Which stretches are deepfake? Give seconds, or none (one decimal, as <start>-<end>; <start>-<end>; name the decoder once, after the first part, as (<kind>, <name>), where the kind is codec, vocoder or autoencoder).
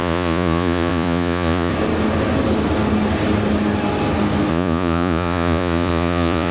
0.0-1.7 (vocoder, Vocos); 4.5-6.5